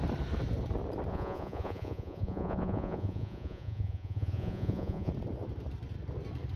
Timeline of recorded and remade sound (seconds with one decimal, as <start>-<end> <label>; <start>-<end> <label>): 0.0-1.1 recorded; 1.1-5.1 remade; 5.1-6.6 recorded